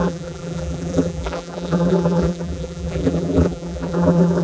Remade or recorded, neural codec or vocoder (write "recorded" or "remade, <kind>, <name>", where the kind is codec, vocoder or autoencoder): remade, vocoder, BigVGAN v2